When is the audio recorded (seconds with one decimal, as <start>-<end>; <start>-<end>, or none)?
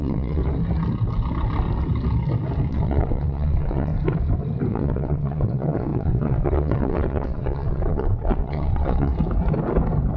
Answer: 0.4-2.7; 3.9-4.7; 9.1-10.2